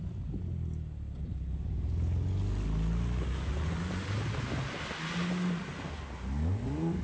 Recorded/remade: recorded